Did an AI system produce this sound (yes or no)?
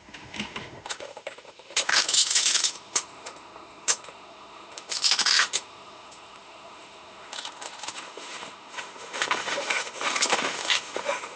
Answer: yes